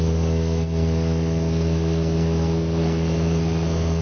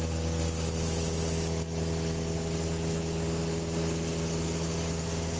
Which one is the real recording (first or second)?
second